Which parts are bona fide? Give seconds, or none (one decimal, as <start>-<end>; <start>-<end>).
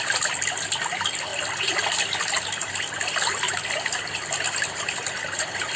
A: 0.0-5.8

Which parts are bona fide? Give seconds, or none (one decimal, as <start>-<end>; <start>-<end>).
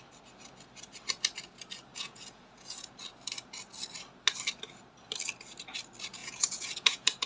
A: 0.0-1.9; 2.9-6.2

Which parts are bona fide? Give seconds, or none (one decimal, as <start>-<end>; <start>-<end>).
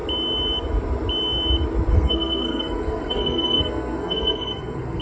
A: 0.0-1.9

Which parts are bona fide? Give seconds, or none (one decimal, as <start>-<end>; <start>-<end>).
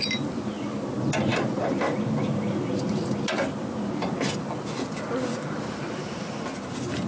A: 0.0-1.3; 1.8-5.3; 6.3-7.1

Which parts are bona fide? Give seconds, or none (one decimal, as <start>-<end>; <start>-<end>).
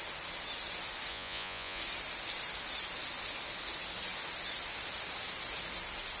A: 0.0-1.1; 1.8-6.2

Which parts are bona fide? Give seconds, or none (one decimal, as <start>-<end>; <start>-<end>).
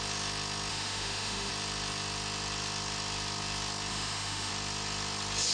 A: 0.0-0.7; 1.5-3.9; 4.5-5.5